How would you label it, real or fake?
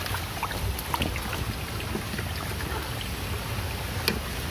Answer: real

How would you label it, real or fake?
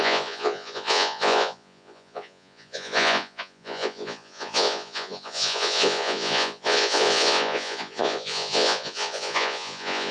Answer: fake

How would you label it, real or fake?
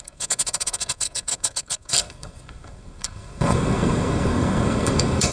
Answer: fake